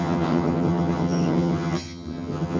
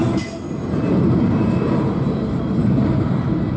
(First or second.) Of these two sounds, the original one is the second